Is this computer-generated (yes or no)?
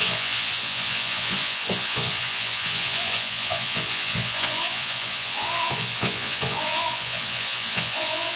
yes